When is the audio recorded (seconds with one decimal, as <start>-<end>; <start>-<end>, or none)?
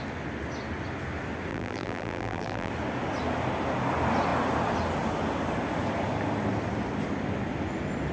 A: 0.0-1.5; 2.7-8.1